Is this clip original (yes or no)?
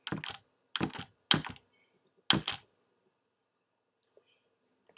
yes